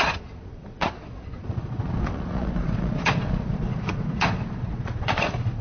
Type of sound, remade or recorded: remade